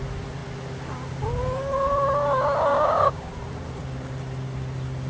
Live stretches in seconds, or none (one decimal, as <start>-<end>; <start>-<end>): 0.0-2.7; 3.3-5.1